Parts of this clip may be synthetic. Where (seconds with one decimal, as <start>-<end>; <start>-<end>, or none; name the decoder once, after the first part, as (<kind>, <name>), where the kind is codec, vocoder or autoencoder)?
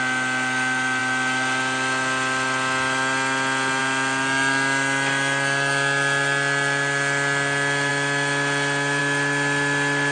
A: none